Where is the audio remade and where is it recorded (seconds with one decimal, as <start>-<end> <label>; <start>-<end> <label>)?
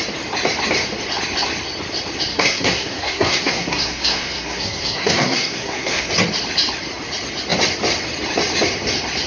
0.0-2.3 recorded; 2.3-6.1 remade; 6.1-9.3 recorded